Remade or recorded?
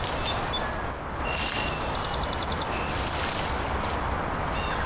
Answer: recorded